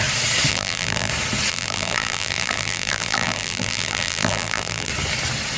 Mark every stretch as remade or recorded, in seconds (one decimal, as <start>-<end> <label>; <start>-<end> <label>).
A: 0.0-0.5 recorded; 0.5-1.1 remade; 1.1-1.5 recorded; 1.5-4.9 remade; 4.9-5.6 recorded